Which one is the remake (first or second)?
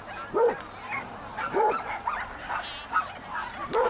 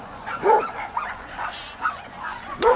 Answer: second